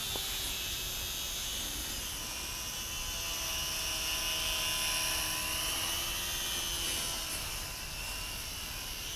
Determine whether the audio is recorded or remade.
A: recorded